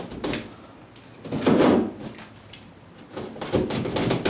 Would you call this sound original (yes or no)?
yes